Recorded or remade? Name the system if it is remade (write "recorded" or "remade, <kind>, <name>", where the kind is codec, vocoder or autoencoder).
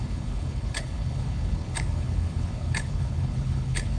remade, codec, HILCodec